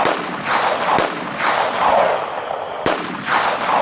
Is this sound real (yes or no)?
yes